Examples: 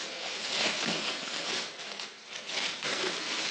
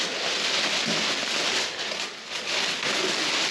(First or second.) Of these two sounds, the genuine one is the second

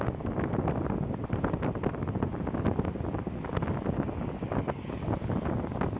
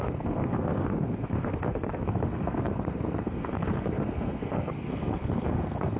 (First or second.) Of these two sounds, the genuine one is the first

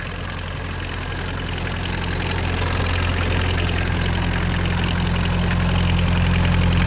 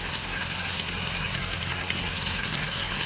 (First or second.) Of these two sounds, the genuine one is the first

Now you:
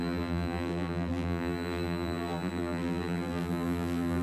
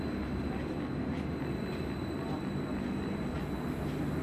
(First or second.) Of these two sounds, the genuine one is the second